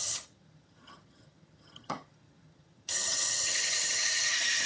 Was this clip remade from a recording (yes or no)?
yes